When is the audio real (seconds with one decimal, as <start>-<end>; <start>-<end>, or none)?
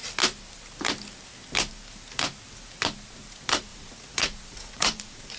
0.0-3.7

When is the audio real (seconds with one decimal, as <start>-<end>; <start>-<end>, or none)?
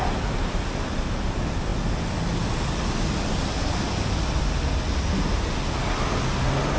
0.0-6.8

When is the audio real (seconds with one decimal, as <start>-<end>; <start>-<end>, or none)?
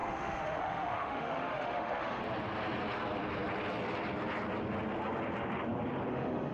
2.2-6.1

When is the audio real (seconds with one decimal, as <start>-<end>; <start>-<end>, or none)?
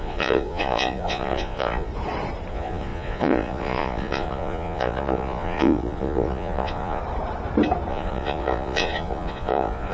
1.9-2.5; 7.0-7.9